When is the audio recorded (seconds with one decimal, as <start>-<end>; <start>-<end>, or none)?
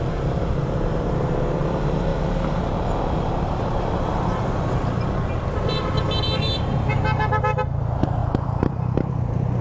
2.1-5.5